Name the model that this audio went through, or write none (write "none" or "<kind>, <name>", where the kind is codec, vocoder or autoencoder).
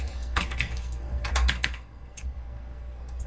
codec, SNAC